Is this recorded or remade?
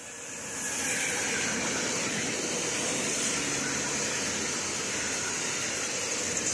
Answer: recorded